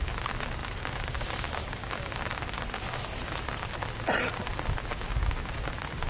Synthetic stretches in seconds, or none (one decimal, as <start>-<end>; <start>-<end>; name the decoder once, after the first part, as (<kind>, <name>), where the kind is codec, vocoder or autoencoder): none